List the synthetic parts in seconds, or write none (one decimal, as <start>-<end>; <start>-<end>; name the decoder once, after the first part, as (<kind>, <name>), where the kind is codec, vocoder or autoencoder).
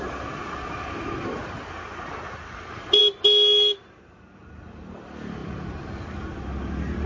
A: 5.4-6.0 (vocoder, BigVGAN v2)